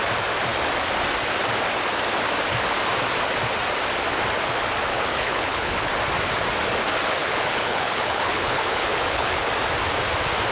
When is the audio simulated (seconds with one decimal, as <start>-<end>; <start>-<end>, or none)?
4.9-5.9; 7.2-9.4